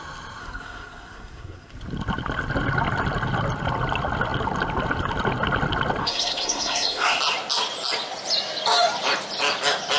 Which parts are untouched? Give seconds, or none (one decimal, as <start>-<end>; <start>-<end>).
0.0-0.4; 1.7-6.0; 7.2-10.0